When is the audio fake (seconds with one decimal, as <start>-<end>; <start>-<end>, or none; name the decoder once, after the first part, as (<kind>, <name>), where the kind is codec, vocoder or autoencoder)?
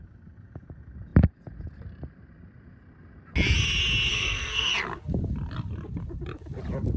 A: 4.1-4.7 (codec, SNAC)